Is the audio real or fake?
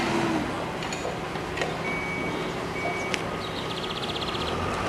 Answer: real